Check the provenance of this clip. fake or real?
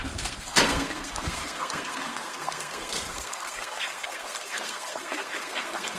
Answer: fake